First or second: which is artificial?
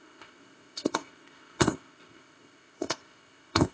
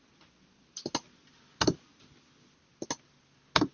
first